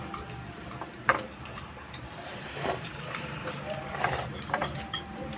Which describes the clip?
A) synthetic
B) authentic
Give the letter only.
A